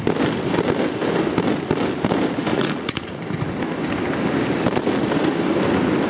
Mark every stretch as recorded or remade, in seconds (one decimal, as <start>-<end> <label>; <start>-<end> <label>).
0.0-2.5 recorded; 2.5-3.2 remade; 3.2-6.1 recorded